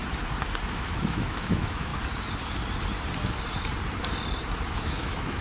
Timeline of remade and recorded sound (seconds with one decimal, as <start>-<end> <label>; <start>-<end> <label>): 0.0-0.7 recorded; 0.7-1.9 remade; 1.9-4.7 recorded; 4.7-5.4 remade